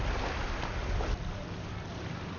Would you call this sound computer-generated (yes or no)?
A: no